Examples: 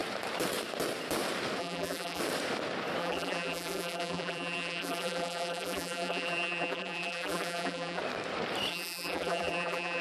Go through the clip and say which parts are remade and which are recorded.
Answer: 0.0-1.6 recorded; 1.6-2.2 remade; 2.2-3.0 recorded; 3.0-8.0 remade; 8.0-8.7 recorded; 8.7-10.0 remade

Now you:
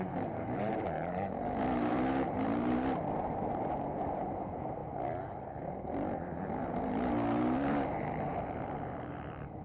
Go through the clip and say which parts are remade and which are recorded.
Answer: 0.0-4.8 remade; 4.8-5.3 recorded; 5.3-9.6 remade

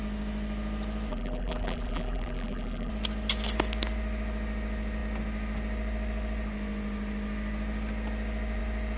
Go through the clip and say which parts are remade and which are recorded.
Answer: 0.0-1.1 recorded; 1.1-2.9 remade; 2.9-9.0 recorded

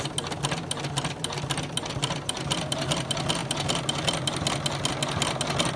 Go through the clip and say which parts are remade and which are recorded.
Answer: 0.0-5.8 recorded

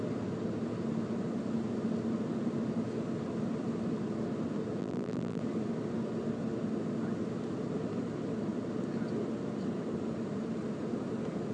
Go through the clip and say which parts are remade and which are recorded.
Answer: 0.0-4.8 recorded; 4.8-5.4 remade; 5.4-11.5 recorded